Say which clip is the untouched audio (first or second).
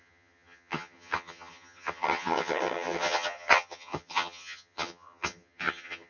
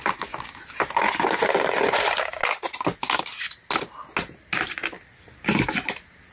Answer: second